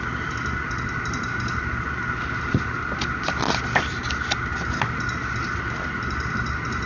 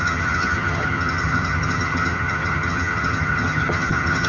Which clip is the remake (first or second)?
second